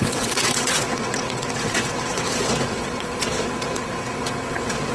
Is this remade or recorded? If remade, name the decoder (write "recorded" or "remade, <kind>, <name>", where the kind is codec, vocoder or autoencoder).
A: remade, vocoder, WaveNeXt